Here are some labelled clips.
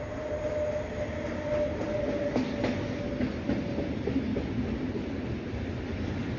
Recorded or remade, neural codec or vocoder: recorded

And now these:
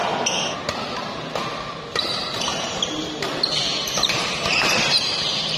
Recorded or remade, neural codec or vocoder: recorded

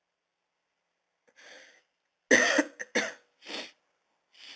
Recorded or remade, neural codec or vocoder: recorded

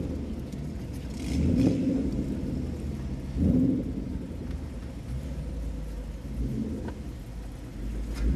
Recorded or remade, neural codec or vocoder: recorded